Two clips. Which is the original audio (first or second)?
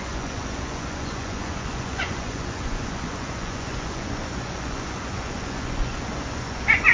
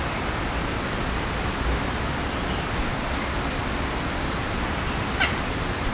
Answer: second